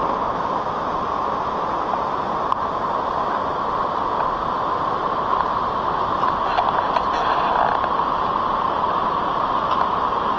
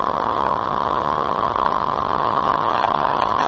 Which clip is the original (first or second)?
first